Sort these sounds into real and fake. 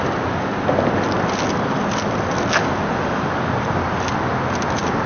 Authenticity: real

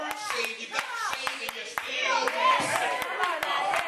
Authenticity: fake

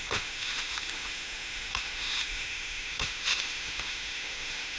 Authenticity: fake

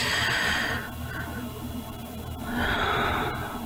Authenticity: real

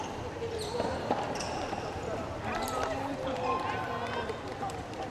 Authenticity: real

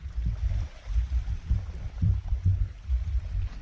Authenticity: real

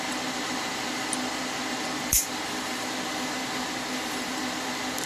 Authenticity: fake